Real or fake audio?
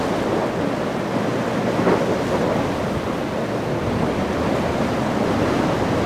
real